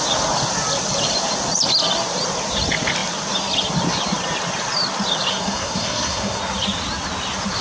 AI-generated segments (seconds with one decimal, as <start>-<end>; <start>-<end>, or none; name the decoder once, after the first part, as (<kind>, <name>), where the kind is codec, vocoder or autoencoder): 5.3-6.4 (codec, SNAC)